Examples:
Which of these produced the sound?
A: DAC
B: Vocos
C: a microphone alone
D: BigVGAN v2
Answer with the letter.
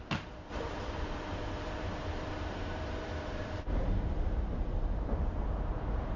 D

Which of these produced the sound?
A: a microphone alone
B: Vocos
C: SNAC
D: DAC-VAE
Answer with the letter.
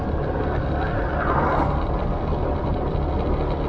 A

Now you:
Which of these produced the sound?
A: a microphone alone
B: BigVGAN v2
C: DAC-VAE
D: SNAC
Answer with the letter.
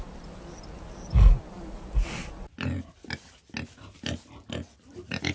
A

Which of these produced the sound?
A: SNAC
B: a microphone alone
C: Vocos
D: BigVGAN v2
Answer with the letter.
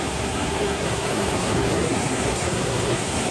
A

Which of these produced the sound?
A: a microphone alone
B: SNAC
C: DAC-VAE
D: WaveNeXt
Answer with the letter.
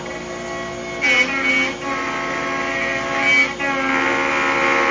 A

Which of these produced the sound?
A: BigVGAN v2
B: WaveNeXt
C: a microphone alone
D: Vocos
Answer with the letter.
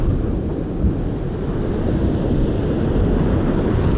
C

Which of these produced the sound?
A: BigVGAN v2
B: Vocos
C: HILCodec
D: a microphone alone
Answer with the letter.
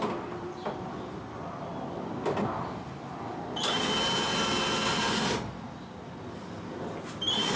D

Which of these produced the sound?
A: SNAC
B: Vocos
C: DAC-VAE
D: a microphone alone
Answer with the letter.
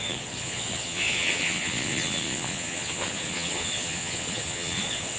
B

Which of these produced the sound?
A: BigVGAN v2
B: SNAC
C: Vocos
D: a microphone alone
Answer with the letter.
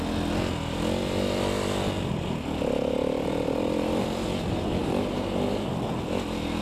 D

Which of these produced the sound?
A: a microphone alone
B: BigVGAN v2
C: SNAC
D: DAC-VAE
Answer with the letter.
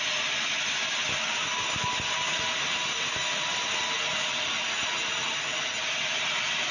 A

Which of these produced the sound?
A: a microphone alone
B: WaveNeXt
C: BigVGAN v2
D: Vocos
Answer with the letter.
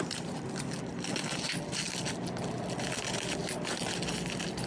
A